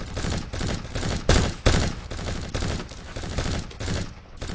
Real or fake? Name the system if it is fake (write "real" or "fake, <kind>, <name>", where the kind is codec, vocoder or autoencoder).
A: real